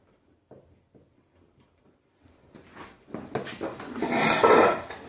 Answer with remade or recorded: remade